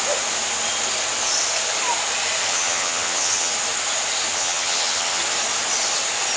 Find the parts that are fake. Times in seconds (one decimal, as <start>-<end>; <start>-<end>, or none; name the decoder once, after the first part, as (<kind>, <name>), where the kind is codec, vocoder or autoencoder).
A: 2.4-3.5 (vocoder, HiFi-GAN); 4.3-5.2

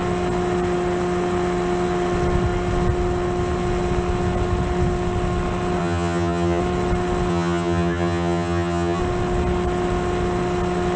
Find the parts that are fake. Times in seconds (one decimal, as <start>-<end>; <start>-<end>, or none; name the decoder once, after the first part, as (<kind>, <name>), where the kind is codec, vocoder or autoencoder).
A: 5.8-6.6 (vocoder, HiFi-GAN); 7.3-9.0

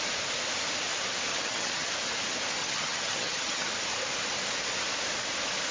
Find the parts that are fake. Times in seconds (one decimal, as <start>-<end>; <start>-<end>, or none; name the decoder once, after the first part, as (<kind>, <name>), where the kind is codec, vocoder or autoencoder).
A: 1.3-1.9 (vocoder, HiFi-GAN); 2.6-3.7

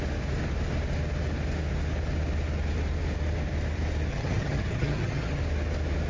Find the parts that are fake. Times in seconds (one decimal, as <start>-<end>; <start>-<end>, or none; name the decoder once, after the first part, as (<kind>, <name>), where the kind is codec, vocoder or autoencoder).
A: 4.1-5.4 (vocoder, HiFi-GAN)

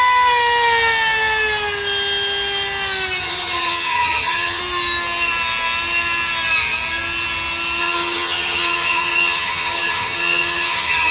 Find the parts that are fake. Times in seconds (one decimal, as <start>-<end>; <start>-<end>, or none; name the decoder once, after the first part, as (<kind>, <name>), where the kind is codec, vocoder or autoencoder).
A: 3.2-4.6 (vocoder, HiFi-GAN); 7.8-11.1

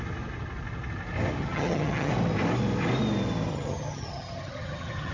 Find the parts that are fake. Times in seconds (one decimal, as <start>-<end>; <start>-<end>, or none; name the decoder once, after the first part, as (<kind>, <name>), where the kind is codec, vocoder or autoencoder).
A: 1.4-2.1 (vocoder, HiFi-GAN); 3.5-5.1

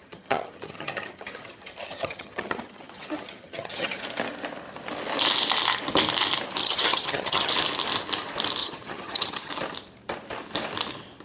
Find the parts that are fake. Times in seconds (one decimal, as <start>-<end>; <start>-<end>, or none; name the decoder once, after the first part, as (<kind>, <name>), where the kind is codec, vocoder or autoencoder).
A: 0.0-4.0 (vocoder, HiFi-GAN); 6.6-7.5; 8.6-9.5

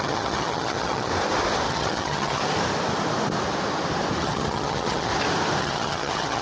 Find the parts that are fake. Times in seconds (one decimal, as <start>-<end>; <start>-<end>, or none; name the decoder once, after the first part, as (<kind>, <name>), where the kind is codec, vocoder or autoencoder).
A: 0.0-1.1 (vocoder, HiFi-GAN); 1.7-2.4; 4.2-5.1; 5.6-6.4